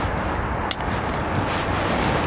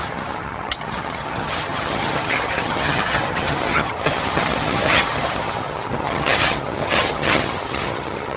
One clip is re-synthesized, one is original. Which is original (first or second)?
first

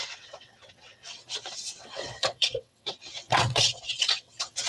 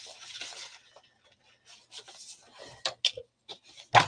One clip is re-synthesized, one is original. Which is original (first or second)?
second